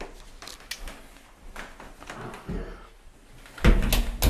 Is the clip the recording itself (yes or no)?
yes